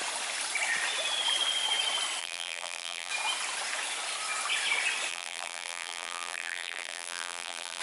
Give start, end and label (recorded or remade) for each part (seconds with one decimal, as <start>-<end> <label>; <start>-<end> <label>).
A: 0.0-2.2 recorded; 2.2-3.1 remade; 3.1-5.1 recorded; 5.1-7.8 remade